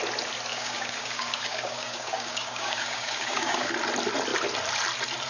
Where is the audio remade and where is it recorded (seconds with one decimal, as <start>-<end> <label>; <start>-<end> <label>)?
0.0-0.5 recorded; 0.5-3.7 remade; 3.7-5.3 recorded